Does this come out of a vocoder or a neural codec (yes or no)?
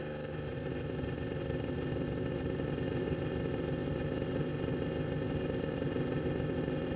yes